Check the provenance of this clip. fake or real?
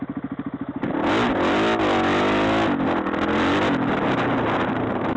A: real